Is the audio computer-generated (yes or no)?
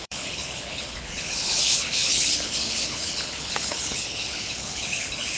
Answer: yes